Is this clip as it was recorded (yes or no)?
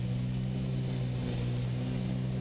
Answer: yes